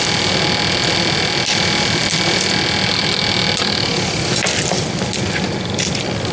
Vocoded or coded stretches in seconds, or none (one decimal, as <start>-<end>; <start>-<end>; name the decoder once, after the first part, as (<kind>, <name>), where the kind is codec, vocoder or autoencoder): none